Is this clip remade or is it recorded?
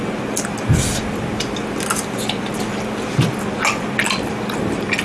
recorded